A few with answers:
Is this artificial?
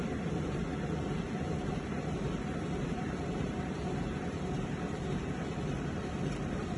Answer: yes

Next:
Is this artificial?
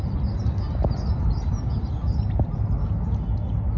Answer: no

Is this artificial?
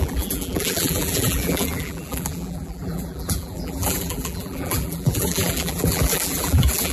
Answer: yes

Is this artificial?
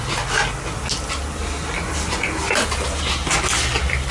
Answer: no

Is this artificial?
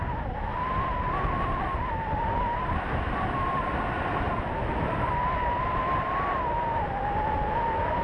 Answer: no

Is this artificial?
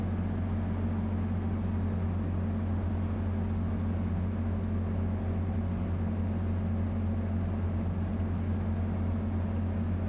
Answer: no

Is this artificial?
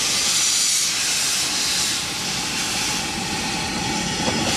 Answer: no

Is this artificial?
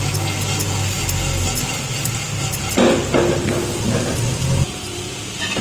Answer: no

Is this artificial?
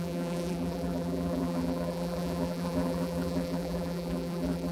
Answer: yes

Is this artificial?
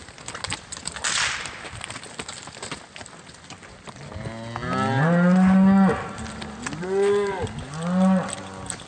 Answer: no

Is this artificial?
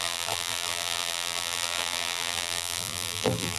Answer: yes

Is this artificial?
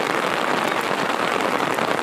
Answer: no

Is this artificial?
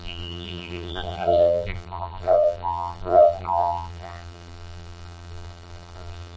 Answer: yes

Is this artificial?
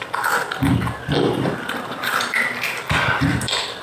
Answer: yes